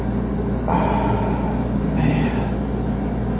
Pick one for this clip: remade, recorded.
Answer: recorded